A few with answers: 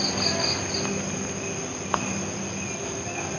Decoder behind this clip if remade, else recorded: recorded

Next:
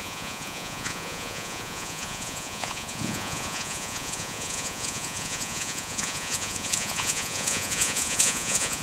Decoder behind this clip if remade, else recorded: remade, vocoder, Vocos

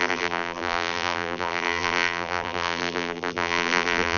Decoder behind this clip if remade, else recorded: remade, vocoder, BigVGAN v2